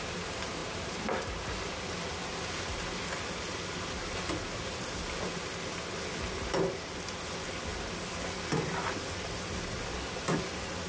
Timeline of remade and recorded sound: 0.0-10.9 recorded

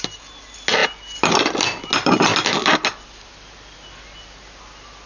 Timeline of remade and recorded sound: 0.0-5.1 recorded

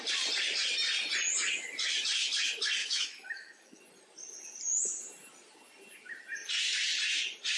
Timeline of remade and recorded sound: 0.0-2.8 recorded; 2.8-3.8 remade; 3.8-7.6 recorded

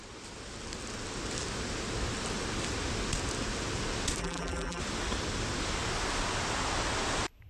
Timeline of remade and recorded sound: 0.0-4.2 recorded; 4.2-4.8 remade; 4.8-7.5 recorded

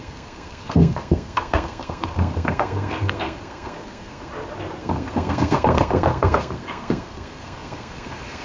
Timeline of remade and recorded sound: 0.0-4.3 remade; 4.3-4.8 recorded; 4.8-8.4 remade

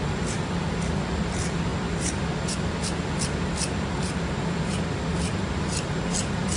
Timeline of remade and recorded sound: 0.0-6.6 recorded